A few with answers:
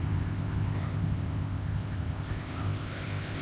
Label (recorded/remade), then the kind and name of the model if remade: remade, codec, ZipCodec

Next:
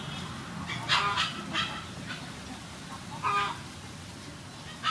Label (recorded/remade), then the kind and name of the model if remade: recorded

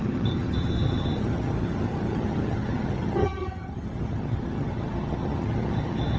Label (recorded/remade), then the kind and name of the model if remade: remade, vocoder, HiFi-GAN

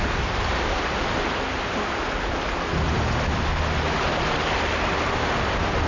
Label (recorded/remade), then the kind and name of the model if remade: recorded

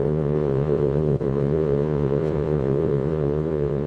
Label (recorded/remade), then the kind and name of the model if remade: remade, vocoder, Vocos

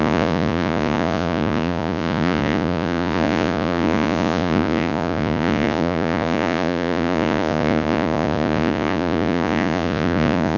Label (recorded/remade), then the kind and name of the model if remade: remade, vocoder, Vocos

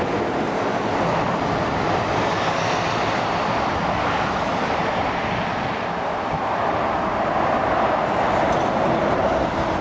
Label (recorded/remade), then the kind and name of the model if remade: recorded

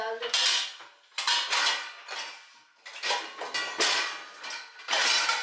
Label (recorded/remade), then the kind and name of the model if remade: recorded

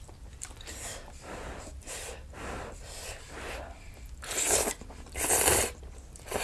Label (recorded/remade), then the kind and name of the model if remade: remade, vocoder, BigVGAN v2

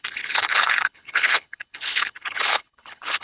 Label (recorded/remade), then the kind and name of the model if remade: remade, codec, HILCodec